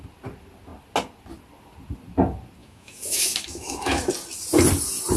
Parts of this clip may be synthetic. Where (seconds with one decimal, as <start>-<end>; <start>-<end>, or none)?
2.6-4.1